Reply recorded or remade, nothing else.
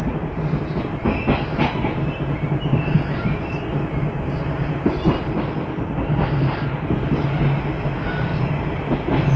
recorded